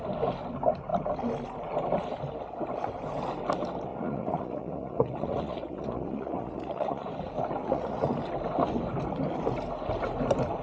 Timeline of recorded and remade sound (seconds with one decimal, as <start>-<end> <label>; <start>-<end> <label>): 0.0-3.9 recorded; 3.9-7.1 remade; 7.1-7.6 recorded; 7.6-8.2 remade; 8.2-10.6 recorded